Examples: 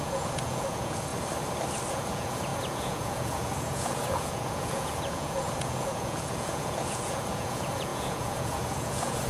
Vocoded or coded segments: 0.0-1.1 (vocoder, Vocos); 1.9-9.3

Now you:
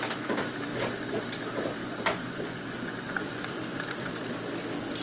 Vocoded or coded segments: 0.7-1.2 (vocoder, Vocos); 1.8-4.1

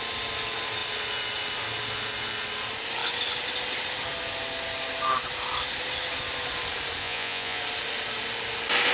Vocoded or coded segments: 7.0-7.6 (vocoder, Vocos)

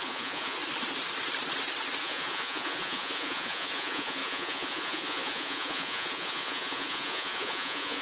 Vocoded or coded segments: 0.0-0.6 (vocoder, Vocos); 2.0-8.0